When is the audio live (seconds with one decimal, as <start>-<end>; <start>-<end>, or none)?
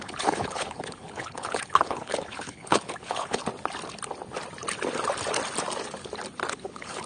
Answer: 3.4-6.5